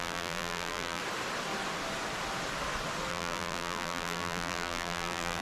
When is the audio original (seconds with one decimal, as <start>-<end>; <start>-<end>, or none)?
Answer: 1.0-3.1